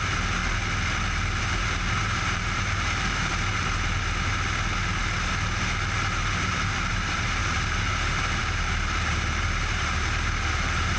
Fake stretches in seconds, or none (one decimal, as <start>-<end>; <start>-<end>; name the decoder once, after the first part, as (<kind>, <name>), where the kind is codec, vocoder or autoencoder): 0.0-0.4 (vocoder, BigVGAN v2); 1.4-3.3; 6.9-11.0